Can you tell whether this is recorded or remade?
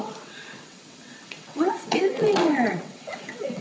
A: remade